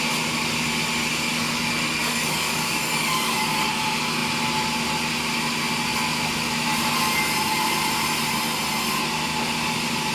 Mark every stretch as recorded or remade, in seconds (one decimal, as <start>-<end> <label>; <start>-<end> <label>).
0.0-1.1 recorded; 1.1-3.7 remade; 3.7-10.1 recorded